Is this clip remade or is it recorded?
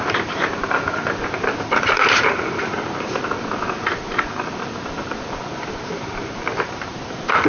remade